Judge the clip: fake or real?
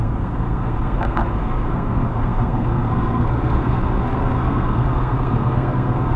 fake